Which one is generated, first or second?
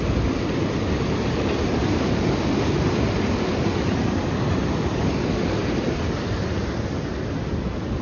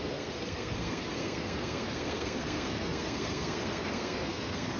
second